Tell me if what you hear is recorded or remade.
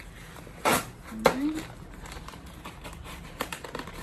remade